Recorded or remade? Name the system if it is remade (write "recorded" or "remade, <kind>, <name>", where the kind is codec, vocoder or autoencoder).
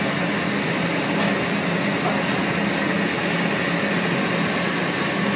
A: recorded